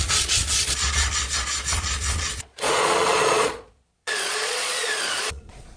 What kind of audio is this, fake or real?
fake